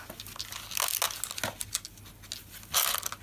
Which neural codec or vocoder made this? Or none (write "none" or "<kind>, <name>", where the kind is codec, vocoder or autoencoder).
none